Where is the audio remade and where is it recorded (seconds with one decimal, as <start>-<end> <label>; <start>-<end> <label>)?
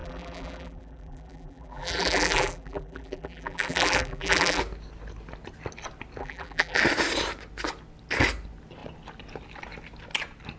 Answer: 0.0-4.6 remade; 4.6-6.2 recorded; 6.2-6.8 remade; 6.8-10.6 recorded